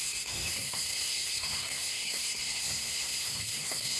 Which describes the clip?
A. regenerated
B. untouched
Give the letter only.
A